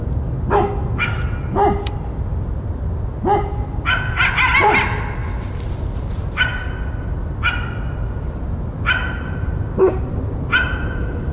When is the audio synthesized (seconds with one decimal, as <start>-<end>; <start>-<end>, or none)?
none